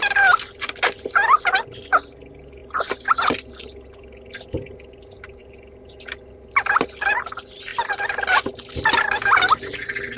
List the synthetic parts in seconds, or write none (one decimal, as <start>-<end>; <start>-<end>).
none